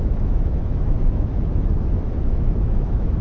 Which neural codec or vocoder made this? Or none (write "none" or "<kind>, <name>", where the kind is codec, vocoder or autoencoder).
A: autoencoder, DAC-VAE